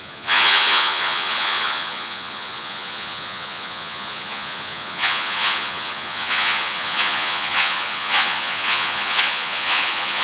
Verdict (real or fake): fake